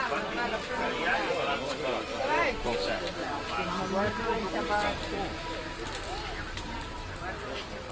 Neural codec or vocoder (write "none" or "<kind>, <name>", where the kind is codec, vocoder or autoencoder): none